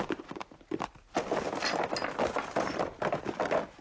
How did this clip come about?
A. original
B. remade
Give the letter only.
A